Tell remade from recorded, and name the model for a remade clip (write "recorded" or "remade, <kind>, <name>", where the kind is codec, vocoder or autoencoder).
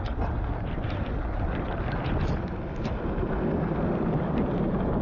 remade, vocoder, BigVGAN v2